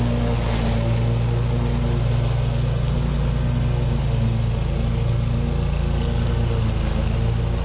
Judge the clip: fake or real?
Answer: real